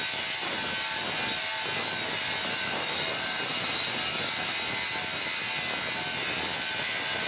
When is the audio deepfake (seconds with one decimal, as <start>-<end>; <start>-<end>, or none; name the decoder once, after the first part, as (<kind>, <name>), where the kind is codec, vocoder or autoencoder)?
none